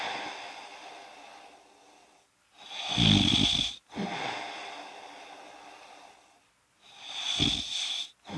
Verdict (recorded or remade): recorded